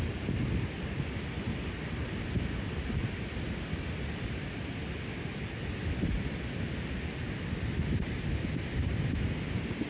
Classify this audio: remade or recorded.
recorded